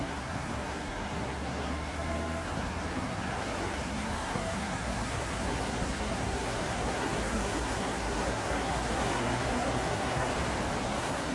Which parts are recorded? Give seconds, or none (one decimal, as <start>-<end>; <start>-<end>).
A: 10.3-10.8